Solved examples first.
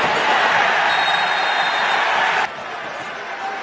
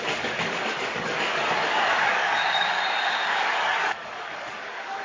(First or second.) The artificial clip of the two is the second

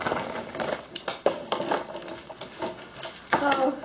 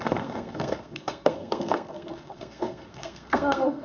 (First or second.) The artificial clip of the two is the second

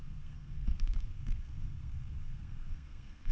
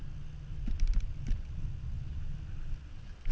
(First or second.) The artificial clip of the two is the first